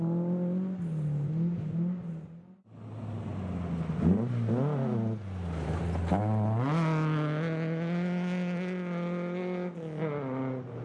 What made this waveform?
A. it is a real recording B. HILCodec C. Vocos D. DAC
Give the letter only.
A